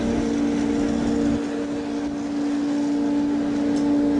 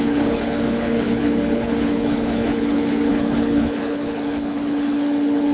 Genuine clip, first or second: first